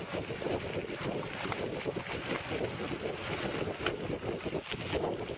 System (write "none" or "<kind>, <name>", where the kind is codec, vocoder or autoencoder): none